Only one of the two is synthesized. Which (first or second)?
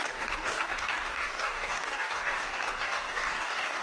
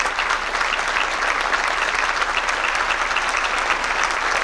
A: first